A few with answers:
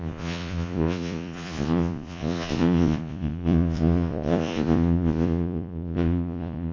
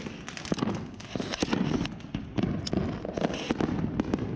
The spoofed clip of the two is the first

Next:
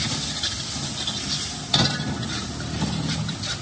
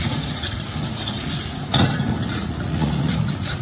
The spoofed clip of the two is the second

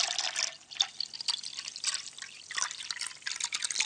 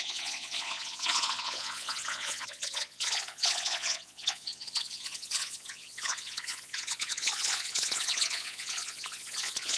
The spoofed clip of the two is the second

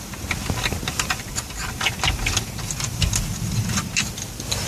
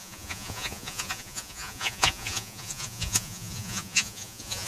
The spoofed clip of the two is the second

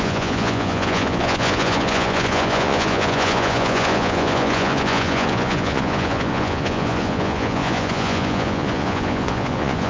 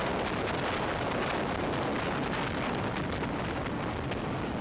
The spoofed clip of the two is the first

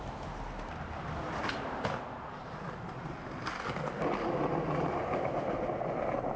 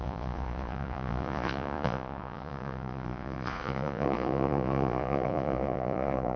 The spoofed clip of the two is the second